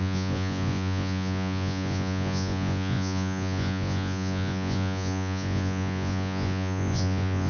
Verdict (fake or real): fake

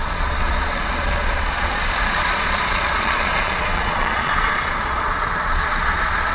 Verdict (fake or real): fake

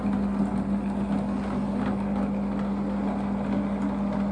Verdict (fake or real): real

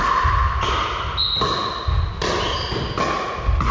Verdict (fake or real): real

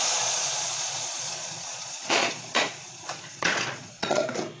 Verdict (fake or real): fake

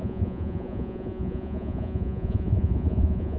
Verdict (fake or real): fake